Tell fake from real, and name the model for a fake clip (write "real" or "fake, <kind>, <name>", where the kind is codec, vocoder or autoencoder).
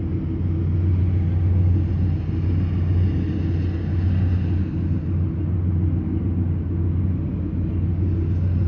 real